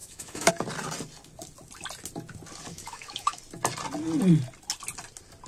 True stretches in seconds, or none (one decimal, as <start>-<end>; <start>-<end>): 0.5-2.7; 3.4-5.5